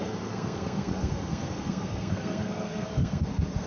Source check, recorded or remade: remade